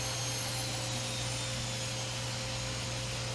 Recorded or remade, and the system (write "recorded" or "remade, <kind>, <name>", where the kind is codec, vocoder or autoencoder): recorded